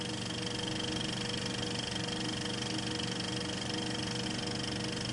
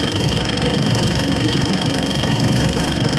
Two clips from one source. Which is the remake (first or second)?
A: second